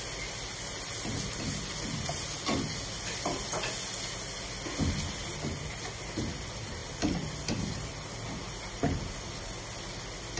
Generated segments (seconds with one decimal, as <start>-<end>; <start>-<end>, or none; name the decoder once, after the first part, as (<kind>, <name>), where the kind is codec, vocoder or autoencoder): none